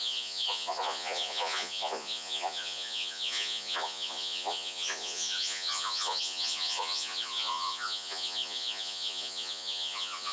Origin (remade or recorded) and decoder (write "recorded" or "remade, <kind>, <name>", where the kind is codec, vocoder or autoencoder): remade, vocoder, Vocos